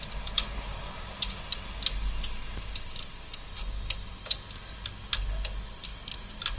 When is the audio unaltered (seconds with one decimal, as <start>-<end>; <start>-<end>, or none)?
0.0-6.6